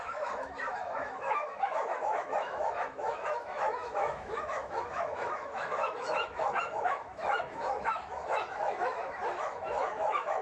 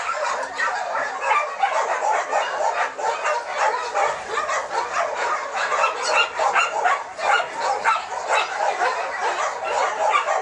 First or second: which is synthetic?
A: first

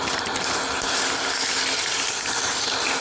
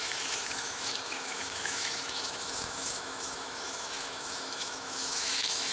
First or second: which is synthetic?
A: second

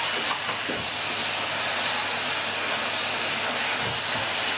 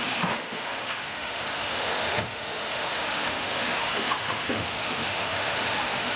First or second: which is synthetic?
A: second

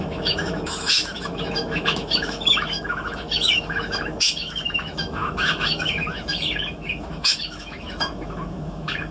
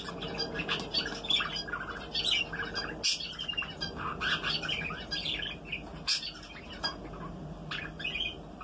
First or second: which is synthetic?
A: first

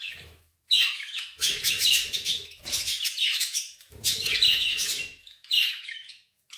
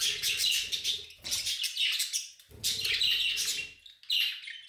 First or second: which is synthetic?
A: first